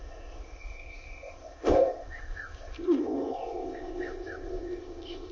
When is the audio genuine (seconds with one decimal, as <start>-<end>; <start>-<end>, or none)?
none